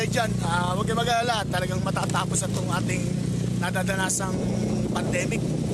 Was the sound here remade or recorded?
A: recorded